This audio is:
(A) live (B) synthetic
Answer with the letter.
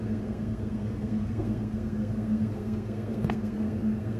B